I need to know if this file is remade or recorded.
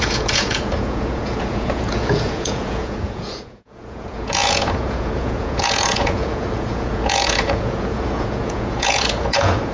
remade